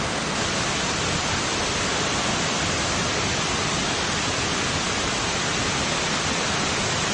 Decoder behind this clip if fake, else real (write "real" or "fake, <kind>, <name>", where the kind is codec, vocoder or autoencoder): real